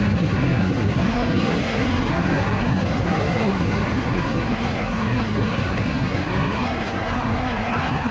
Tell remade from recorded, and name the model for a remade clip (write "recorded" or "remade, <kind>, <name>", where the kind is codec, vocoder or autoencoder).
remade, codec, SNAC